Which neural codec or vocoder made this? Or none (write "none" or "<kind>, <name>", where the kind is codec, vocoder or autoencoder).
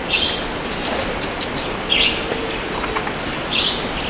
none